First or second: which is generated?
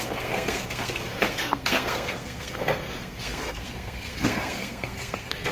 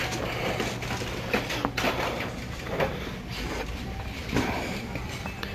first